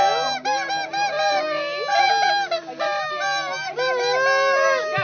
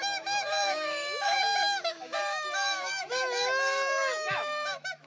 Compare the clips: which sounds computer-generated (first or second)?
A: second